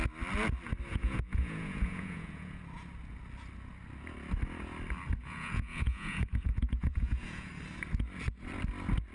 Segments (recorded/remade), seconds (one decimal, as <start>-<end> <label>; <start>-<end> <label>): 0.0-0.9 recorded; 0.9-2.6 remade; 2.6-5.2 recorded; 5.2-7.5 remade; 7.5-9.1 recorded